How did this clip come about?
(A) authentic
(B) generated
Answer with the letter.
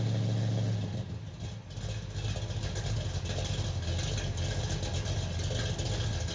A